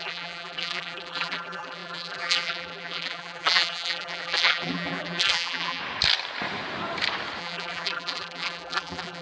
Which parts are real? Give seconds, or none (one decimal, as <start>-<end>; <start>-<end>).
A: 5.8-7.4